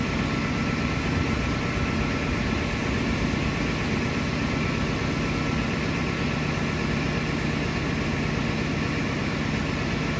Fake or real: real